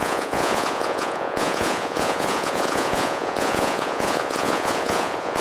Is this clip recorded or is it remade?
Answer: remade